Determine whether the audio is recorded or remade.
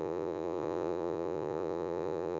remade